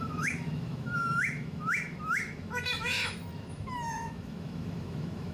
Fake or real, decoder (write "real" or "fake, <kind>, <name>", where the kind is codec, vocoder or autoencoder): fake, autoencoder, DAC-VAE